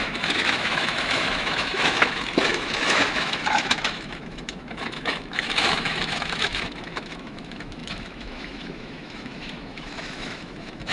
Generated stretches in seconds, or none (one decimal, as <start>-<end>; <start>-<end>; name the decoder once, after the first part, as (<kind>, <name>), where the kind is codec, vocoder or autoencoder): 0.0-10.9 (autoencoder, DAC-VAE)